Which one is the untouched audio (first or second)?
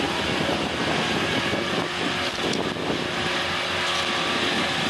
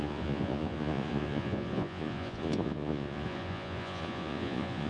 first